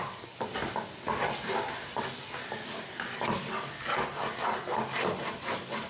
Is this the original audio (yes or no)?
yes